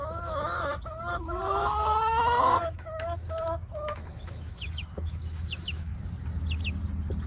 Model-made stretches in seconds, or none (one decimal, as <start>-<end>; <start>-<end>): 0.0-5.9